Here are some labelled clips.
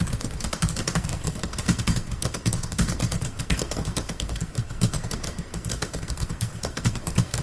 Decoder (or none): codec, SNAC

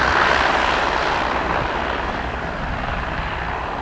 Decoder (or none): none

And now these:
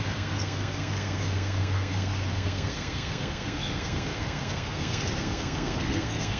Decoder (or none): codec, SNAC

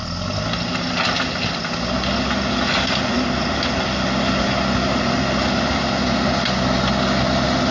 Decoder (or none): none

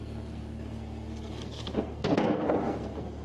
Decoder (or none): codec, SNAC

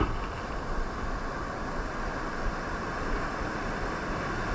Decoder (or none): none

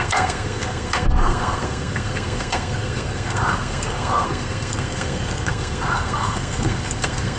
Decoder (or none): codec, SNAC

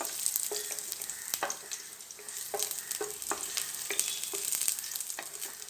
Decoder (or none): none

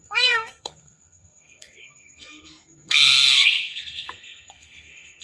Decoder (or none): codec, SNAC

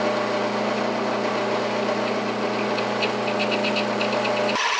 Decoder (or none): none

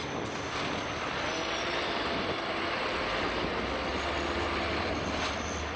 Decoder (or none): none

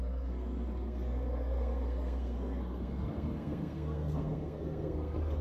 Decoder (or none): codec, SNAC